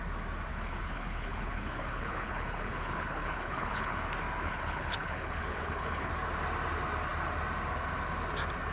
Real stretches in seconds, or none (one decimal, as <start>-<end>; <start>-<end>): 0.0-0.5; 4.0-4.4; 6.1-8.7

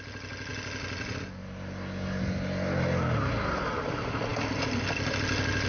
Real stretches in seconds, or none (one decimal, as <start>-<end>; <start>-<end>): 0.0-5.7